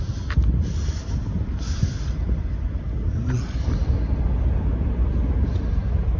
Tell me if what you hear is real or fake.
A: real